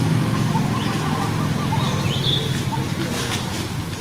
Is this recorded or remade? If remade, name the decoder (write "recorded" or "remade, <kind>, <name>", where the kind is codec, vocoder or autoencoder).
recorded